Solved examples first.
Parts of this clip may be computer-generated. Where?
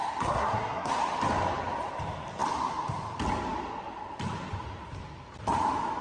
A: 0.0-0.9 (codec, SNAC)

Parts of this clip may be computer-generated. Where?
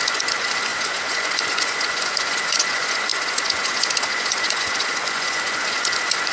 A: 0.0-6.3 (vocoder, Vocos)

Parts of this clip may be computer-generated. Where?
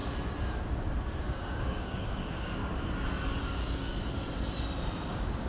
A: 1.2-2.6 (codec, DAC); 3.4-3.9; 5.1-5.5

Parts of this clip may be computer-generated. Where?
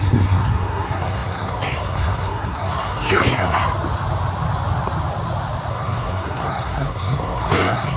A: 0.0-3.6 (codec, SNAC); 5.7-8.0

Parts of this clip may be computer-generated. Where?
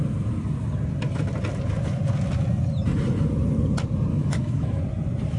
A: 4.1-4.8 (autoencoder, DAC-VAE)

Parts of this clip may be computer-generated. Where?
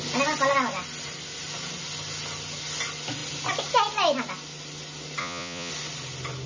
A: 5.2-5.7 (vocoder, Vocos)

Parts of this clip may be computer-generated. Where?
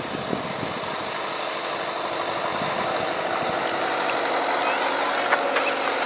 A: 2.5-3.2 (vocoder, BigVGAN v2)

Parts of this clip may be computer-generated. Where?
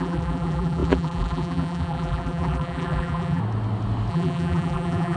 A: 0.0-3.4 (vocoder, BigVGAN v2); 4.1-5.2